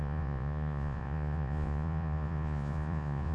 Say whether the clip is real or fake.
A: fake